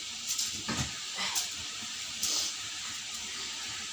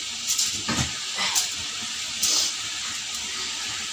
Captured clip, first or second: second